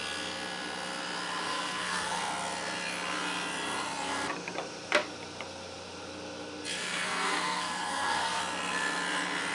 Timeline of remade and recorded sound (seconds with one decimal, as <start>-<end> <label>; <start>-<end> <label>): 0.0-1.4 recorded; 1.4-2.2 remade; 2.2-6.7 recorded; 6.7-8.4 remade; 8.4-9.5 recorded